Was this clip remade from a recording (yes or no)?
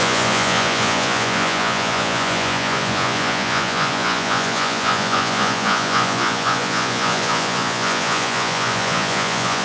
yes